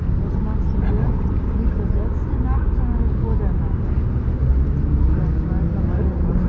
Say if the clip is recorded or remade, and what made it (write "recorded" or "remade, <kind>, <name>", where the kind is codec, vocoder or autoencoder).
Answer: recorded